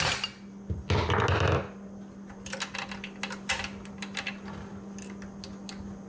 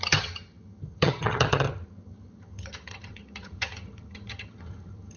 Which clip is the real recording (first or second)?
first